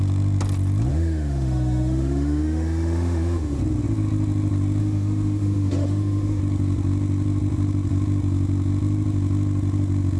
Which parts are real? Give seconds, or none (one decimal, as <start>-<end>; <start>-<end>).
0.0-0.9; 3.6-4.8; 6.4-10.2